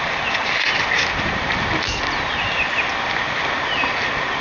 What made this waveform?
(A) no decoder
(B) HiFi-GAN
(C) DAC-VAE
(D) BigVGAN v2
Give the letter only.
A